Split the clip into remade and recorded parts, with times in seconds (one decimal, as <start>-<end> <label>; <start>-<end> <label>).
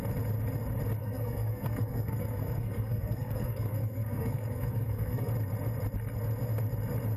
0.0-1.0 recorded; 1.0-5.3 remade; 5.3-7.2 recorded